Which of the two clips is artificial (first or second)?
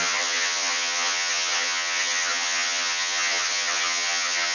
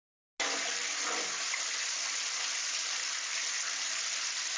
first